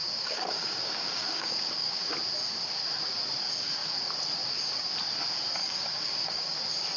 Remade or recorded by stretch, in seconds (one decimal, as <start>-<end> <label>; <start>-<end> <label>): 0.0-2.1 remade; 2.1-5.6 recorded; 5.6-6.6 remade; 6.6-7.0 recorded